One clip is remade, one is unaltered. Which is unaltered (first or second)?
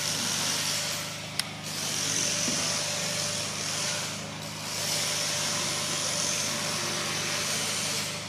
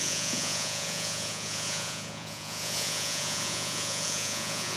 first